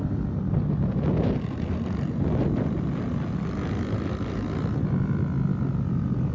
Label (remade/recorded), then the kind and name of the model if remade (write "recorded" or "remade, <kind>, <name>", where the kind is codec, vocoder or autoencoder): recorded